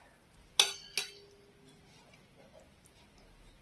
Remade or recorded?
recorded